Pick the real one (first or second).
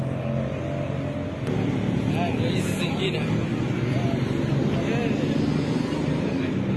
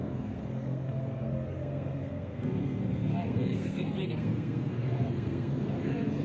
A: first